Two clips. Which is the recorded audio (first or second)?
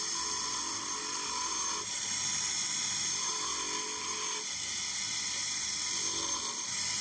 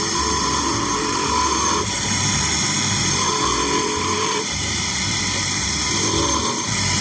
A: first